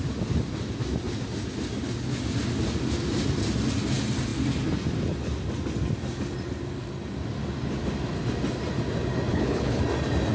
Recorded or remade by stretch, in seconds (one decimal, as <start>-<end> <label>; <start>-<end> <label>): 0.0-9.3 recorded; 9.3-9.8 remade; 9.8-10.3 recorded